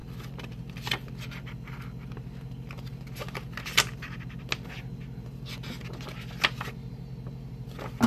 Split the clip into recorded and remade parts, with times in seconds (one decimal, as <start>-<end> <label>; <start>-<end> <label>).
0.0-2.1 remade; 2.1-8.1 recorded